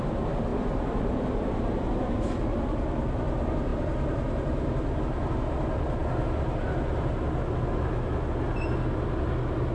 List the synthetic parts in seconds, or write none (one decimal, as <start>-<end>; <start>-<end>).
0.5-1.9